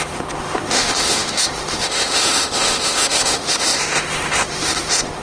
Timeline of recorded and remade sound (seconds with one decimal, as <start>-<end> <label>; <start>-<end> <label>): 0.0-5.2 remade